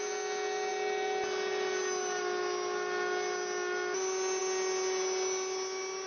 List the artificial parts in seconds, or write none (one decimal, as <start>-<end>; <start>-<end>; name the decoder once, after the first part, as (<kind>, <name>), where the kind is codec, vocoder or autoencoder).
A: none